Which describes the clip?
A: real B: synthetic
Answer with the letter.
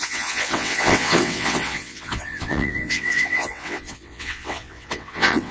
B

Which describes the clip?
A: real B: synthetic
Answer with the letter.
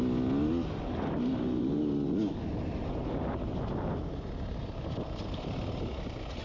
A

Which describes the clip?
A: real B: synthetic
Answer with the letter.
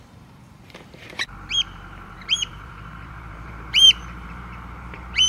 B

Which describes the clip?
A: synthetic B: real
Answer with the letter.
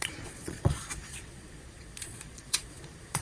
A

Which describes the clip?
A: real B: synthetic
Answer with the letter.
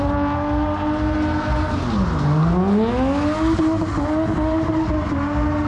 A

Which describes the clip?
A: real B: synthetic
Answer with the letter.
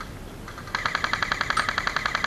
A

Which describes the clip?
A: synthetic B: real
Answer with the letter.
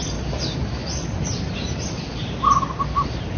B